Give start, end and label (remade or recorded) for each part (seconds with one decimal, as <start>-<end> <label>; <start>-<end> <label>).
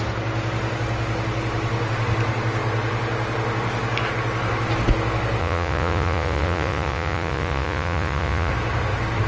0.0-5.4 recorded; 5.4-8.5 remade; 8.5-9.3 recorded